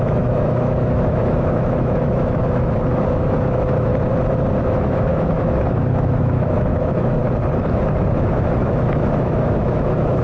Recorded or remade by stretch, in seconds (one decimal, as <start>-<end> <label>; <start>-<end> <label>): 0.0-3.9 remade; 3.9-4.6 recorded; 4.6-7.2 remade; 7.2-8.1 recorded; 8.1-10.2 remade